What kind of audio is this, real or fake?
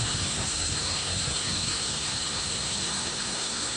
fake